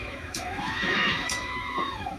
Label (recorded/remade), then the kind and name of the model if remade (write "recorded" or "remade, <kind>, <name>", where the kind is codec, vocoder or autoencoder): remade, autoencoder, DAC-VAE